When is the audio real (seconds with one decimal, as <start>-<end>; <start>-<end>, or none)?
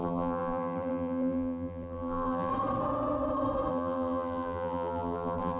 2.5-3.7